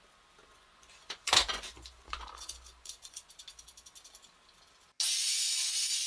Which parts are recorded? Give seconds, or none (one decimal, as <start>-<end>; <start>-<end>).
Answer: 0.0-0.5; 3.3-6.1